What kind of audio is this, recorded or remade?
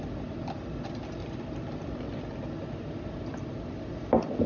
recorded